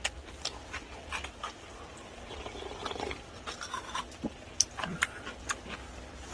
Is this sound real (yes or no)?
yes